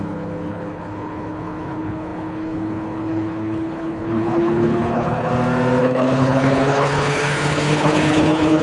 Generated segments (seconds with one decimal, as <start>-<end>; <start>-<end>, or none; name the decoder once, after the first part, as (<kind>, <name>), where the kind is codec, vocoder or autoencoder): 0.0-5.3 (codec, HILCodec); 5.8-8.6